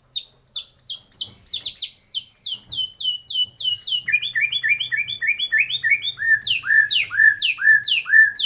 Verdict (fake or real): real